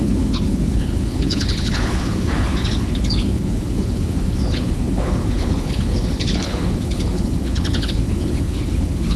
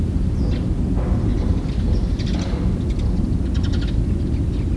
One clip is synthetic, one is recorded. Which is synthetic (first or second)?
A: first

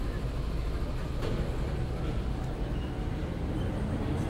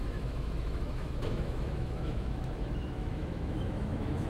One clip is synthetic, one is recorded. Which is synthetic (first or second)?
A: second